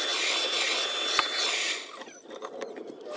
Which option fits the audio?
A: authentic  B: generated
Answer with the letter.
A